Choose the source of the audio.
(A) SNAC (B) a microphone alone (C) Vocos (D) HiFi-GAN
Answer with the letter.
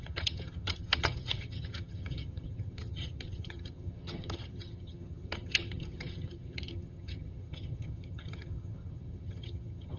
D